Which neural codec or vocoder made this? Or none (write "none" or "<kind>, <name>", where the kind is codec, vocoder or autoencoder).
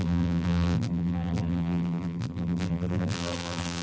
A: vocoder, BigVGAN v2